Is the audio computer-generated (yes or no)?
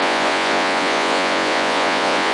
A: yes